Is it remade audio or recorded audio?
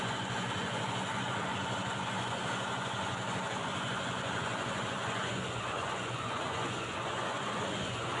remade